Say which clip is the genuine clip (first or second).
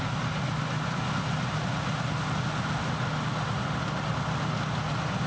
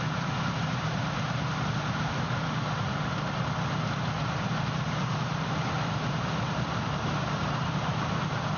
first